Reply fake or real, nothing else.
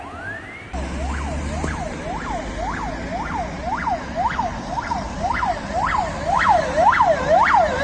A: real